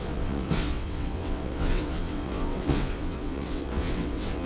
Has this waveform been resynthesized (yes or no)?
yes